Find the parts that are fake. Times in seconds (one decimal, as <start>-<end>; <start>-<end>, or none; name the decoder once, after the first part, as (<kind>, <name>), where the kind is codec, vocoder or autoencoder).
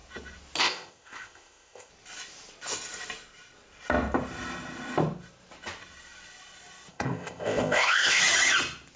0.6-1.9 (codec, ZipCodec); 6.9-8.2